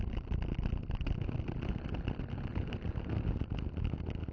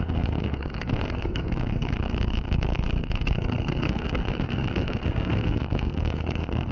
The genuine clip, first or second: first